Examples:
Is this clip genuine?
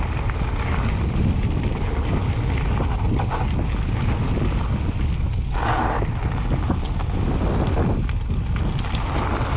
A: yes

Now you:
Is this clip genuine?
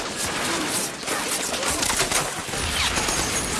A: yes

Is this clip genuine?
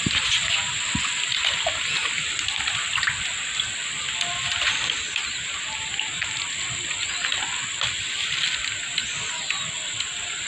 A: yes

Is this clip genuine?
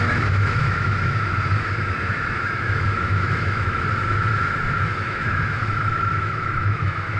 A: no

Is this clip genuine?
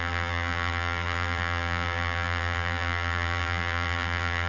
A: no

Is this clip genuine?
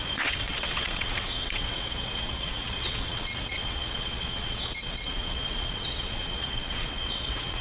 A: no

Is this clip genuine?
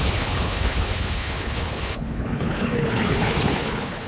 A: no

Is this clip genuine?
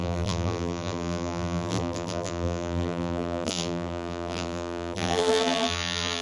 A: no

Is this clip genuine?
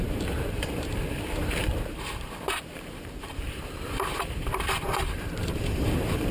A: no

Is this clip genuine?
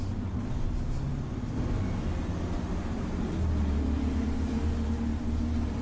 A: yes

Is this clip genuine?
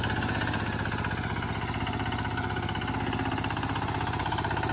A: yes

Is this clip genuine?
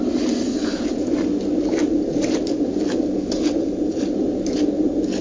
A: yes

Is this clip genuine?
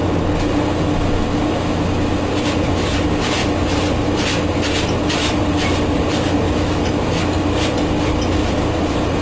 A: yes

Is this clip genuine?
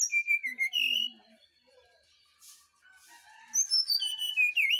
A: yes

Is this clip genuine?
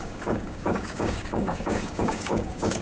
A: no